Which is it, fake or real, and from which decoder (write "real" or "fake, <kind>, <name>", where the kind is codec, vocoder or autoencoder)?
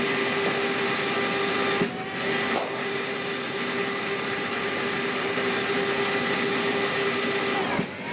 real